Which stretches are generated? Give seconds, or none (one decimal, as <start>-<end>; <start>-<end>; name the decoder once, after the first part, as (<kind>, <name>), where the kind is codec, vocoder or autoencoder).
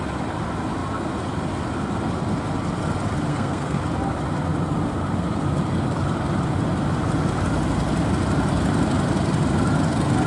3.3-3.8 (codec, SNAC)